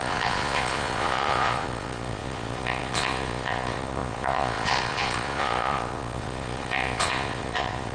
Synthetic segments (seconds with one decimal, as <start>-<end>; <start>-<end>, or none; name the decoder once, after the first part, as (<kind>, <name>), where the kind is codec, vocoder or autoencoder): 0.0-7.9 (vocoder, Vocos)